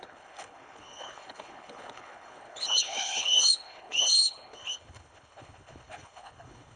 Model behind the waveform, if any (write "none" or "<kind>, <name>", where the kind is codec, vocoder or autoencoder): codec, HILCodec